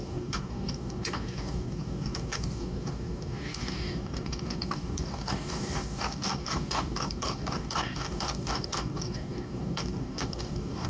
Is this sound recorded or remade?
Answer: remade